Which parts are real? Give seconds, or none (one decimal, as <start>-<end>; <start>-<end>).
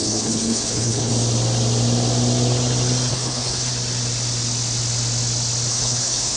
1.1-3.1; 3.7-5.7